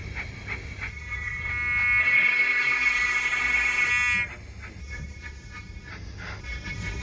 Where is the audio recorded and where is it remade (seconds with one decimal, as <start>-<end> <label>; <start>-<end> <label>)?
0.0-0.9 recorded; 0.9-1.5 remade; 1.5-2.0 recorded; 2.0-3.9 remade; 3.9-4.8 recorded; 4.8-5.9 remade; 5.9-6.4 recorded; 6.4-7.0 remade